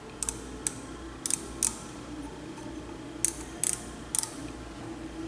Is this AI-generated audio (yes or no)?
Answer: no